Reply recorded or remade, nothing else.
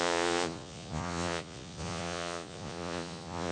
remade